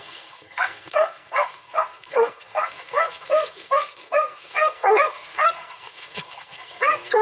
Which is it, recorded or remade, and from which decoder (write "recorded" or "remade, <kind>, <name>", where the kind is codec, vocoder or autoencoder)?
remade, codec, SNAC